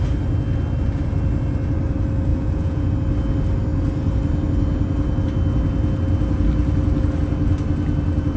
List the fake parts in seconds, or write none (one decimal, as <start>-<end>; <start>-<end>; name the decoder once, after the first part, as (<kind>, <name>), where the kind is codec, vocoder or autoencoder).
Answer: 2.3-2.9 (vocoder, Vocos)

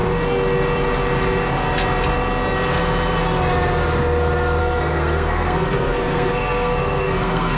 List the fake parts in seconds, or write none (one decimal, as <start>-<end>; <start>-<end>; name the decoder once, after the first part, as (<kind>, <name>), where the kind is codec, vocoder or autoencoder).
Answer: 4.6-7.6 (codec, SNAC)

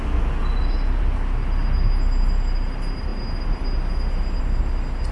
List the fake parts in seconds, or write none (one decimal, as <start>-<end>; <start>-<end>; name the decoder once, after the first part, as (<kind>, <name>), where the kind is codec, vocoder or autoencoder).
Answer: none

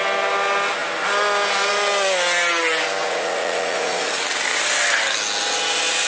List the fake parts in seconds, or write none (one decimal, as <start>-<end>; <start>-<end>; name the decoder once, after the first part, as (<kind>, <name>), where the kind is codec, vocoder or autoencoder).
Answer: 3.0-4.1 (vocoder, Vocos)